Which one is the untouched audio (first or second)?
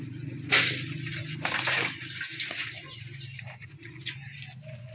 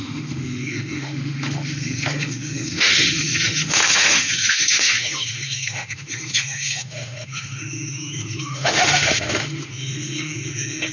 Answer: first